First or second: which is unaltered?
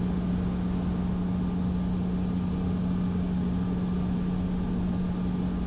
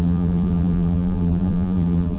first